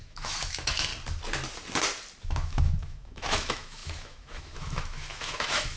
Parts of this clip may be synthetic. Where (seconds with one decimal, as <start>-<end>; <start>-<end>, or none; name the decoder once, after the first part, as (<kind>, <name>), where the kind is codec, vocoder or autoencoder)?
0.0-0.9 (autoencoder, DAC-VAE); 2.2-5.8